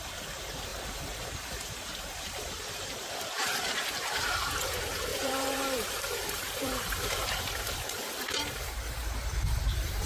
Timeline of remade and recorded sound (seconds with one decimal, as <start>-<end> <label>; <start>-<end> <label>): 0.0-0.7 recorded; 0.7-4.1 remade; 4.1-5.1 recorded; 5.1-10.1 remade